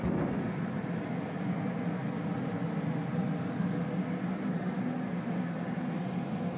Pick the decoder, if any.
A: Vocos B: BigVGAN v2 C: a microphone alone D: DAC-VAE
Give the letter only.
C